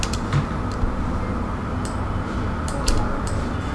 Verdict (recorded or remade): recorded